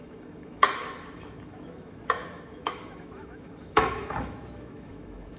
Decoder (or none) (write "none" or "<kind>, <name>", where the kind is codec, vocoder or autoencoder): autoencoder, DAC-VAE